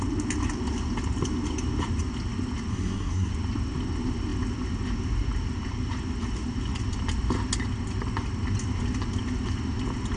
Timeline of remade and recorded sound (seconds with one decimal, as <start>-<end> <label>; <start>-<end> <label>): 0.0-2.7 recorded; 2.7-3.3 remade; 3.3-10.2 recorded